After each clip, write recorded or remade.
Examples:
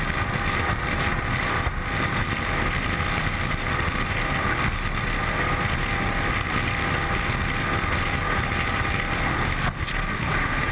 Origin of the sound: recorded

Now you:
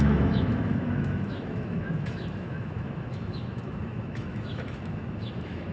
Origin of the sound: remade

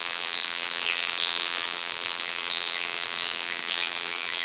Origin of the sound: remade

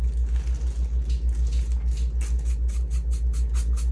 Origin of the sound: recorded